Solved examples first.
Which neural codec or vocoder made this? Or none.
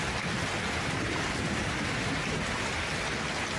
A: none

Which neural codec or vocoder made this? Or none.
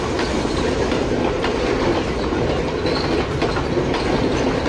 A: none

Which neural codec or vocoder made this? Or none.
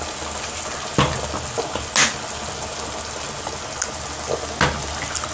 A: none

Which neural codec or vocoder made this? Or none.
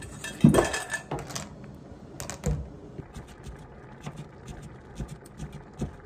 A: none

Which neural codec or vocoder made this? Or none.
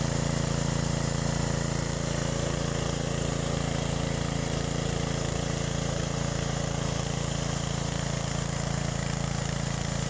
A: vocoder, BigVGAN v2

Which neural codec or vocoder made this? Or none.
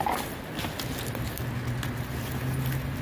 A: none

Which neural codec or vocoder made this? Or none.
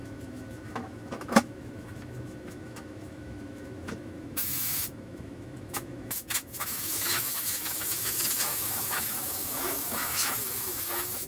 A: autoencoder, DAC-VAE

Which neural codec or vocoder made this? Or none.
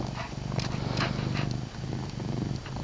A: none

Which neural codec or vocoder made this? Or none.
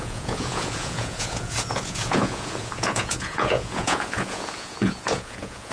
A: vocoder, Vocos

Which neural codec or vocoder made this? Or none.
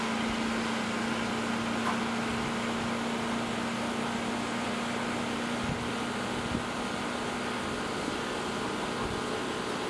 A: none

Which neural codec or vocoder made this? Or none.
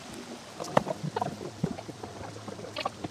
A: vocoder, BigVGAN v2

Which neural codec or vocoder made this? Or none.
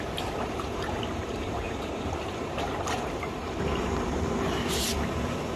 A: vocoder, BigVGAN v2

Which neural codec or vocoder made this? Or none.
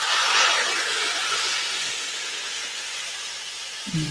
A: vocoder, Vocos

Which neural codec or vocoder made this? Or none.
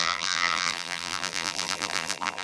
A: vocoder, BigVGAN v2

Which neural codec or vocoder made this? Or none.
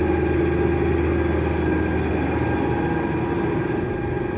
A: none